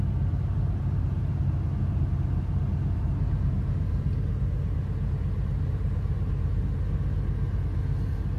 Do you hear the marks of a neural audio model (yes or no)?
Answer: no